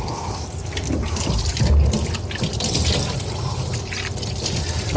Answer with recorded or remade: recorded